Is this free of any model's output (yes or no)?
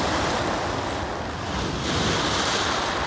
yes